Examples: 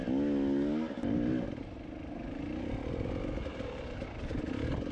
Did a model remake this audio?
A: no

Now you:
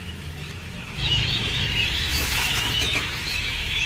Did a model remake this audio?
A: yes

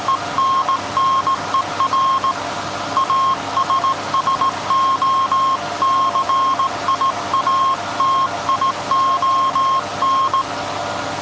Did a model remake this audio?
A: no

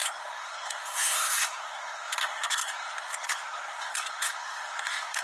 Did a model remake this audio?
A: yes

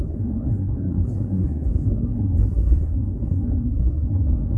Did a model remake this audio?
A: yes